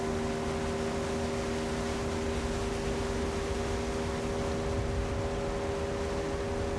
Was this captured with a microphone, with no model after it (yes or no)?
yes